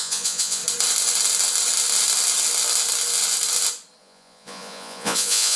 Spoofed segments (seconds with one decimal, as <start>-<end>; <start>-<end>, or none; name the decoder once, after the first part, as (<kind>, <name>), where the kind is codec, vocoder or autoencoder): 0.0-0.6 (vocoder, Vocos); 4.0-5.6